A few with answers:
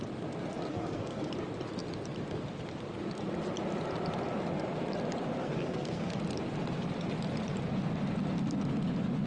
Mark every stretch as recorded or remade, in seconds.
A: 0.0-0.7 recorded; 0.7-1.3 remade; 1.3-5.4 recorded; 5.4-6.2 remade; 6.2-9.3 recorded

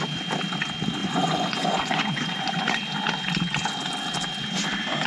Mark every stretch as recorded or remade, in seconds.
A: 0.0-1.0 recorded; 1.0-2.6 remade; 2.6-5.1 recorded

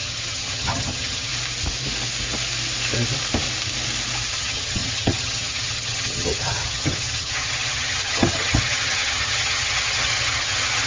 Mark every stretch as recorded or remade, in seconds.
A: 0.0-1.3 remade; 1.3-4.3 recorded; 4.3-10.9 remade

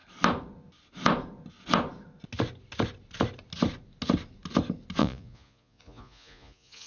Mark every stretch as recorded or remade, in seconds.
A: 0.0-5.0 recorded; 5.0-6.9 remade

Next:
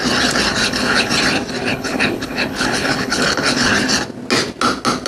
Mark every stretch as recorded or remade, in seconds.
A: 0.0-0.6 recorded; 0.6-1.1 remade; 1.1-1.7 recorded; 1.7-3.7 remade; 3.7-5.1 recorded